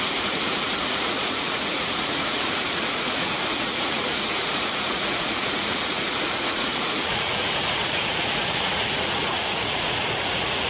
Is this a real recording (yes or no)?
no